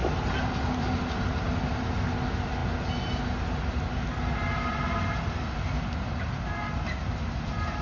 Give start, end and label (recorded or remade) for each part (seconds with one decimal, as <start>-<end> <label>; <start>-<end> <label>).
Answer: 0.0-1.0 remade; 1.0-7.8 recorded